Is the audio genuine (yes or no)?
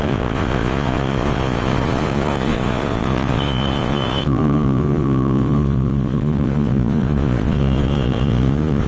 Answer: no